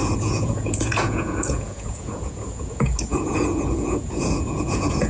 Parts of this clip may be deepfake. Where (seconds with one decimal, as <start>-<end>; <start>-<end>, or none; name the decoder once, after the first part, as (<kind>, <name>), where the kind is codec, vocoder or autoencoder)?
0.0-5.1 (vocoder, Vocos)

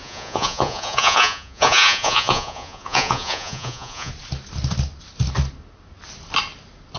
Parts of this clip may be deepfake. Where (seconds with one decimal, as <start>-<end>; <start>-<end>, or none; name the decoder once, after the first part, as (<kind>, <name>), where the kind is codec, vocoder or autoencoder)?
0.0-4.1 (vocoder, Vocos)

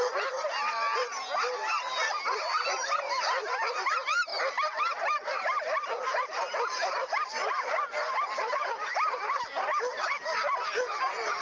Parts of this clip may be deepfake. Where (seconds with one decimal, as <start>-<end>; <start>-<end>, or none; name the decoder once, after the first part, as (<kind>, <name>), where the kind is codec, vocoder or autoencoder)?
none

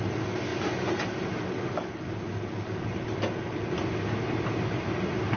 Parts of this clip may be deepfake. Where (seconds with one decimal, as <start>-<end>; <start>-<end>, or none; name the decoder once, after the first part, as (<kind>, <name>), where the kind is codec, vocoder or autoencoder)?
none

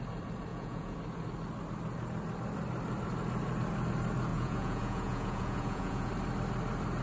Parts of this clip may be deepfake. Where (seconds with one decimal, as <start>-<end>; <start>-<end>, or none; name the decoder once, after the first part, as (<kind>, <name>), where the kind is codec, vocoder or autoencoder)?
0.5-1.0 (vocoder, Vocos); 4.3-6.1

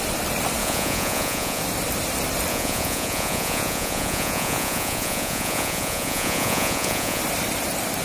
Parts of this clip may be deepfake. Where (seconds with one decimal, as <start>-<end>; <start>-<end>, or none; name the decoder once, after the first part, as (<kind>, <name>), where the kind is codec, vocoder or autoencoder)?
0.6-1.6 (vocoder, Vocos); 2.5-7.2

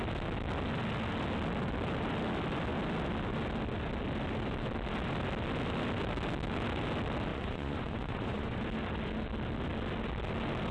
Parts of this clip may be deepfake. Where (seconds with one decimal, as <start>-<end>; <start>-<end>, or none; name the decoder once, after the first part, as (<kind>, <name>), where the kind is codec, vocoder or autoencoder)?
7.3-8.6 (vocoder, Vocos)

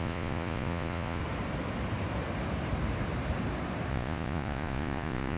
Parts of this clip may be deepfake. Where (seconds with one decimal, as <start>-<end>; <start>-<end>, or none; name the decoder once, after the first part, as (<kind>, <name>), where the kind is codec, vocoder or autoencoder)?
0.0-1.2 (vocoder, Vocos); 3.9-5.4